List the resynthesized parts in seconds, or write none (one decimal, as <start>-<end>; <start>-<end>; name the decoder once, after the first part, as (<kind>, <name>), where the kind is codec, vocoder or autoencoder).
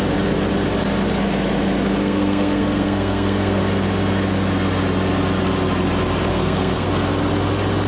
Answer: 2.0-3.6 (codec, SNAC); 6.3-6.9